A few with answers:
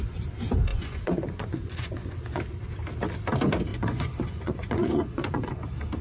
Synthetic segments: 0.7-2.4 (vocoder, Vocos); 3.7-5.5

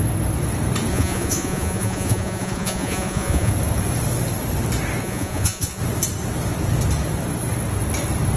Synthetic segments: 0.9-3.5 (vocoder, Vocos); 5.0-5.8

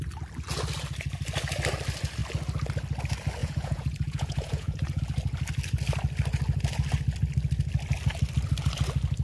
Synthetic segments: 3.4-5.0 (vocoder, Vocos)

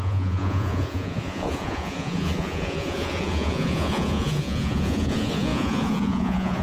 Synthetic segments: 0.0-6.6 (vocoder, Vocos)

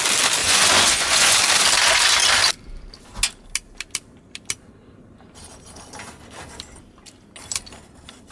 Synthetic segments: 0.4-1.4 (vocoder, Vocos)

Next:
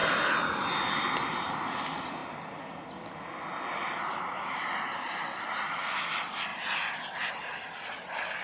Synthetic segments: none

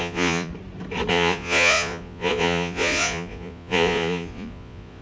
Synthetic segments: 0.0-0.5 (vocoder, Vocos); 1.1-5.0

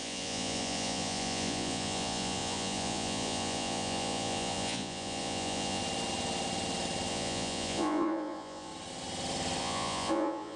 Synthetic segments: 0.0-5.8 (vocoder, Vocos); 7.1-8.7; 9.6-10.6